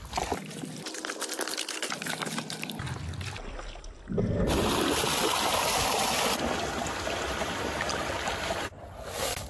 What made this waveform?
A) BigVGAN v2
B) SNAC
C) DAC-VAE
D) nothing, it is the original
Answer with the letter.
D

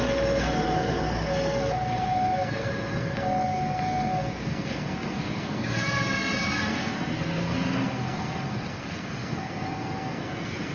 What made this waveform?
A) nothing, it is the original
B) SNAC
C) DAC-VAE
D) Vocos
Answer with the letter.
B